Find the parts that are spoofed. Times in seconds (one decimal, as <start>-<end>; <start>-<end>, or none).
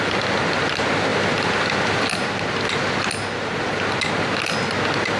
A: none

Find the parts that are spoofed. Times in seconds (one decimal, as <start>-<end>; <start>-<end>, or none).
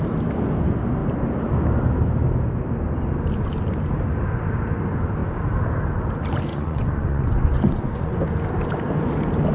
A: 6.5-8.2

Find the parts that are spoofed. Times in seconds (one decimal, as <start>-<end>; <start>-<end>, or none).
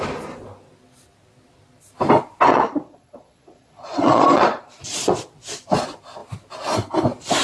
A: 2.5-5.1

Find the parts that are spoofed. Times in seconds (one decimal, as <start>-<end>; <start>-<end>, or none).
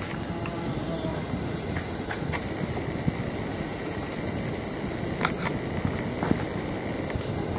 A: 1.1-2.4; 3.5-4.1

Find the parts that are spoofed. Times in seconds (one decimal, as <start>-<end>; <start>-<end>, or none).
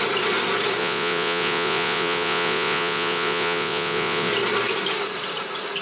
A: 0.8-4.3